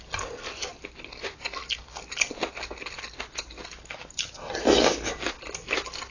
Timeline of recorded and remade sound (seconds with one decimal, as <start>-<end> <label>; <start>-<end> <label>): 0.0-6.1 recorded